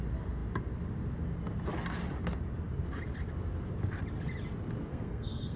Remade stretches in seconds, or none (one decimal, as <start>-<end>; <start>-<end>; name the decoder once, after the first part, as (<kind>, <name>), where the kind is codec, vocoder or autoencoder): 4.9-5.6 (codec, SNAC)